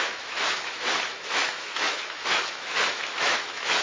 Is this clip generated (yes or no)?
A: yes